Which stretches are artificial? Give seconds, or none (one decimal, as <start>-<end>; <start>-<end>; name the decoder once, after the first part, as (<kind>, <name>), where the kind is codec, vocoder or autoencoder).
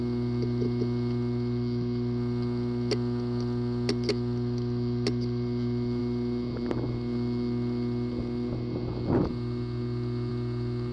none